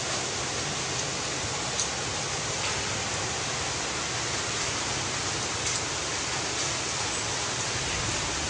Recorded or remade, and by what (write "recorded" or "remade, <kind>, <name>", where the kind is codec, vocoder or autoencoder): recorded